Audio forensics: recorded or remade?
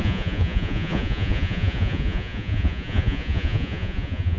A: remade